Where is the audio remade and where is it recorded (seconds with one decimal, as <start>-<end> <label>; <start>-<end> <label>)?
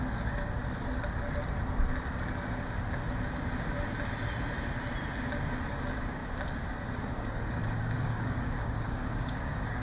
0.0-0.6 remade; 0.6-5.7 recorded; 5.7-6.2 remade; 6.2-7.0 recorded; 7.0-9.8 remade